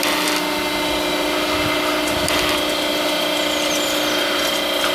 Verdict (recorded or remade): recorded